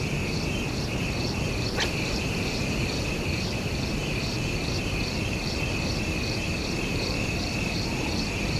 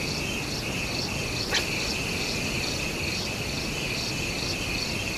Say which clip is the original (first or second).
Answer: second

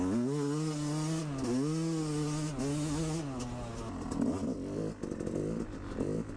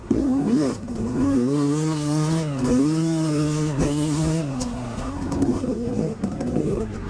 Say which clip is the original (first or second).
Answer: first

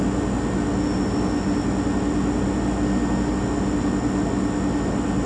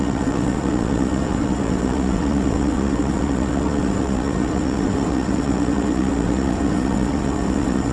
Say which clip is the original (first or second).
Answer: first